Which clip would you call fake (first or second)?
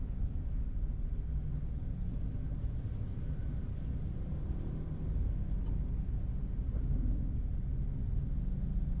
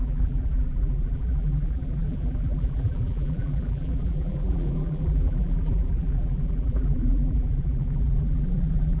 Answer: second